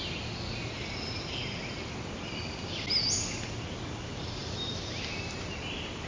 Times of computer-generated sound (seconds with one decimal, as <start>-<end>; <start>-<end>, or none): none